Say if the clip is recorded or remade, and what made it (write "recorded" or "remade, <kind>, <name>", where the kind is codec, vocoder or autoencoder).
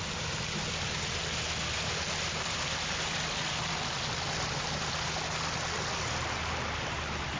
recorded